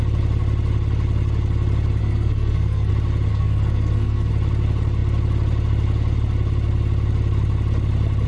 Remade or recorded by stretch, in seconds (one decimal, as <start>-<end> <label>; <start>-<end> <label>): 0.0-2.0 recorded; 2.0-2.9 remade; 2.9-3.3 recorded; 3.3-4.3 remade; 4.3-8.3 recorded

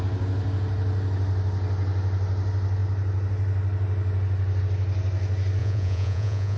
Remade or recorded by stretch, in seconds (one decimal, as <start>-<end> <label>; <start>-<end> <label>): 0.0-5.6 recorded; 5.6-6.6 remade

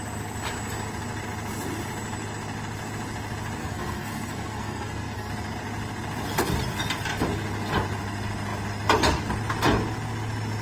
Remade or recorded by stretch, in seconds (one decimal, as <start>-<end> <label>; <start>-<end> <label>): 0.0-3.6 recorded; 3.6-5.3 remade; 5.3-10.6 recorded

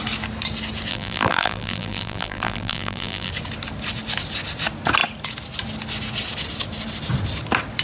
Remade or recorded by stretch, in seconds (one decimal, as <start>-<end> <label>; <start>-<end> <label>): 0.0-0.9 recorded; 0.9-3.3 remade; 3.3-7.8 recorded

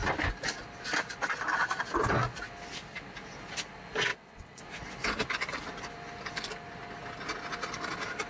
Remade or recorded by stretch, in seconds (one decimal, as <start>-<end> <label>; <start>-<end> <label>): 0.0-4.1 recorded; 4.1-4.6 remade; 4.6-8.3 recorded